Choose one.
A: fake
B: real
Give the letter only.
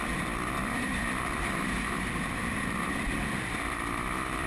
A